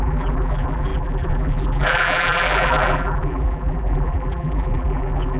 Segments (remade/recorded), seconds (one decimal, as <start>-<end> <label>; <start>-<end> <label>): 0.0-5.4 remade